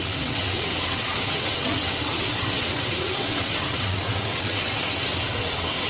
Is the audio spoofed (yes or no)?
yes